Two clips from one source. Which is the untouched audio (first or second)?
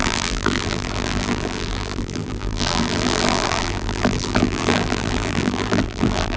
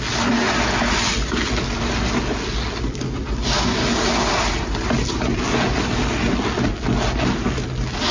second